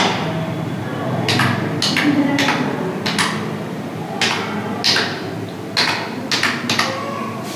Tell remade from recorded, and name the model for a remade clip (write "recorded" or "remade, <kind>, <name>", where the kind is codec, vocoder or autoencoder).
recorded